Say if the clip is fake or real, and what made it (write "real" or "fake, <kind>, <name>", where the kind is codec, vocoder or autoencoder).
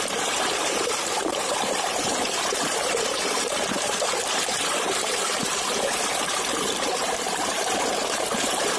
fake, vocoder, BigVGAN v2